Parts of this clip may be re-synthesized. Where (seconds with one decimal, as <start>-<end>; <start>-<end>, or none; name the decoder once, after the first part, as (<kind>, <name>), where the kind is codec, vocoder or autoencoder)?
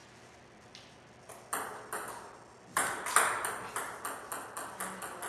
none